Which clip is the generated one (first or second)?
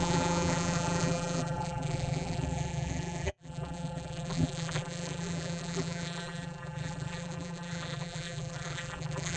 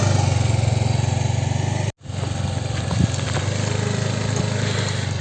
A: first